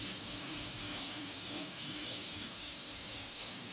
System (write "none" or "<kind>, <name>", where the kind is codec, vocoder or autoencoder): codec, DAC